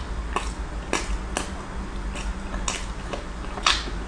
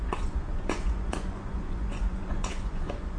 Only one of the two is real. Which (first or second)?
first